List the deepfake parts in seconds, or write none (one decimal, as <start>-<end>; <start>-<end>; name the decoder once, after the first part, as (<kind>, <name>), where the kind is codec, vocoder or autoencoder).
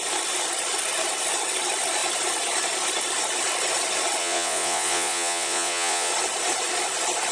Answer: 4.2-6.1 (vocoder, Vocos)